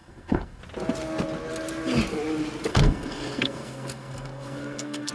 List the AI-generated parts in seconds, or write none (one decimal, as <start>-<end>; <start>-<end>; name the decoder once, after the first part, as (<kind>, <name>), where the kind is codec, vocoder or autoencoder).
0.0-0.6 (codec, SNAC); 2.7-5.1